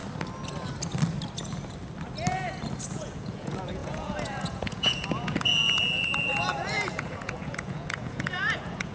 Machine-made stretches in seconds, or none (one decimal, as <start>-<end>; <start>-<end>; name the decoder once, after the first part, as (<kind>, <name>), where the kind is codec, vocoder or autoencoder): 2.9-8.9 (vocoder, Vocos)